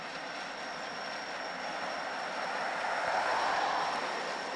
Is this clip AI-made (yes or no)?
no